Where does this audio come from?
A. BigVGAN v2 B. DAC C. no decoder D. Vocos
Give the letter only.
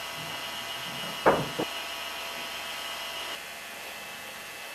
C